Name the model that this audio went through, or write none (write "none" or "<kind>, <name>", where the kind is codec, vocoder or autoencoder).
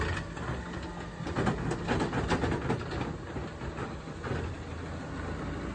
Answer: none